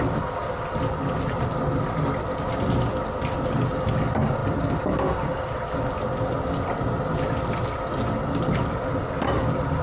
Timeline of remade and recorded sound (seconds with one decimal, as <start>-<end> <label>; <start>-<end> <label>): 0.0-9.8 recorded